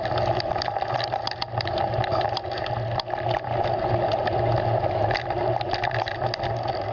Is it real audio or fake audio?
real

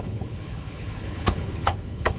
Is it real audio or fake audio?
fake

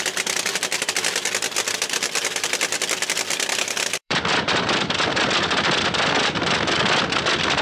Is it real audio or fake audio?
fake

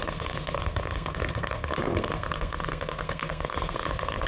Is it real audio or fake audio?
fake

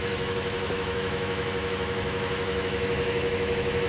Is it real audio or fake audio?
fake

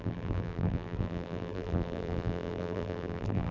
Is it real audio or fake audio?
fake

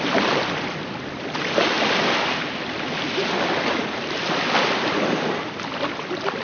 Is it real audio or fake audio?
real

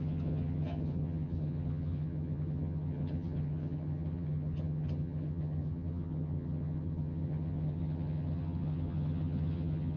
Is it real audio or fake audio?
fake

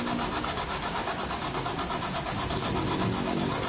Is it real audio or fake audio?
real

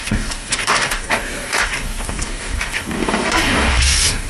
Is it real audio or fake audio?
fake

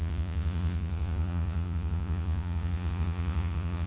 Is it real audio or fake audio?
fake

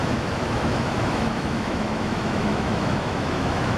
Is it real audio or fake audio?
fake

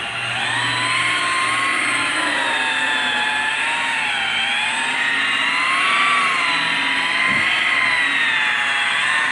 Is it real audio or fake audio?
real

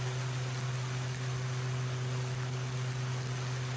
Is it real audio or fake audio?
real